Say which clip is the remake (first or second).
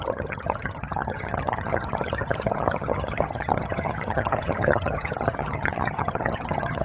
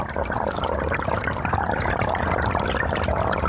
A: first